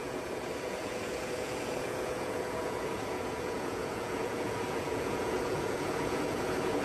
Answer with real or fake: fake